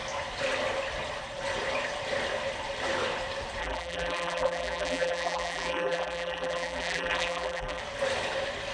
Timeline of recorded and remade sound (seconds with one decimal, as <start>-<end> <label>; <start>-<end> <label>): 0.0-3.6 recorded; 3.6-7.8 remade; 7.8-8.7 recorded